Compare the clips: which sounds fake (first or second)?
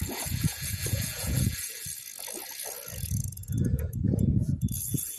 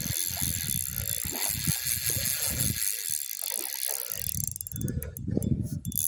first